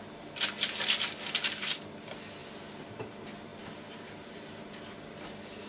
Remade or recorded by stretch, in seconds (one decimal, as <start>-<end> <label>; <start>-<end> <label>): 0.0-2.4 recorded; 2.4-2.9 remade; 2.9-3.5 recorded; 3.5-4.6 remade; 4.6-5.7 recorded

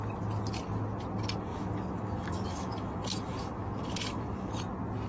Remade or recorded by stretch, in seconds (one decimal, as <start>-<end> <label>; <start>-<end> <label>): 0.0-1.5 recorded; 1.5-4.6 remade; 4.6-5.1 recorded